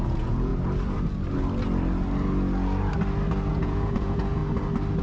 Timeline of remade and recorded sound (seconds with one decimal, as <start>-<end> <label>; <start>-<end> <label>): 0.0-0.5 remade; 0.5-3.5 recorded; 3.5-4.4 remade; 4.4-5.0 recorded